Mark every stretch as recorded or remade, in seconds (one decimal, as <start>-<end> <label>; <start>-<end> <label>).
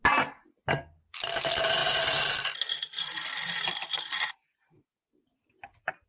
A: 0.0-6.1 recorded